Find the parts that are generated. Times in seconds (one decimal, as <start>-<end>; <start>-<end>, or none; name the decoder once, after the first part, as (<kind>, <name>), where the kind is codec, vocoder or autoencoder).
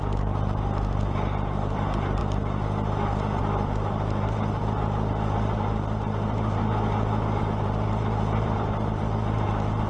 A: 0.0-2.2 (vocoder, BigVGAN v2); 3.4-6.6; 7.4-9.9